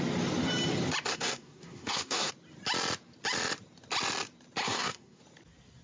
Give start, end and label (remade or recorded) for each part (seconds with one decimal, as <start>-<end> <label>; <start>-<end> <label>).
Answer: 0.0-1.1 recorded; 1.1-2.3 remade; 2.3-4.6 recorded; 4.6-5.2 remade; 5.2-5.8 recorded